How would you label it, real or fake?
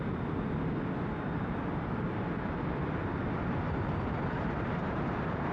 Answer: real